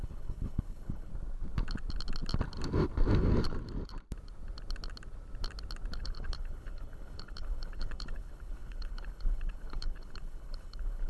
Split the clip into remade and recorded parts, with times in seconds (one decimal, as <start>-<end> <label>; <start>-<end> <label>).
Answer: 0.0-1.1 remade; 1.1-6.0 recorded; 6.0-11.1 remade